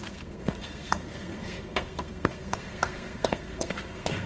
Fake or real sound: fake